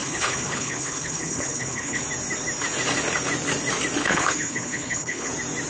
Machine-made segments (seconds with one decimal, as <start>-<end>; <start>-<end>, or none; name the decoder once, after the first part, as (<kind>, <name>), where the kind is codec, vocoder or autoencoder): 0.0-2.0 (codec, HILCodec); 4.0-5.3